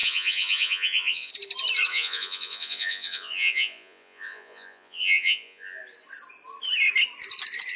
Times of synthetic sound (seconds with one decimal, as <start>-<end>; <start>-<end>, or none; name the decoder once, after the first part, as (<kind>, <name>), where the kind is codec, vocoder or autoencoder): 0.0-1.3 (vocoder, Vocos); 1.9-5.8